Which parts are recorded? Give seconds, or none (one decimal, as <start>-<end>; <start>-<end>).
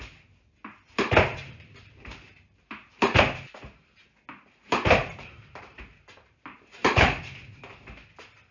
0.0-1.3; 3.2-5.0; 5.8-6.8; 7.6-8.5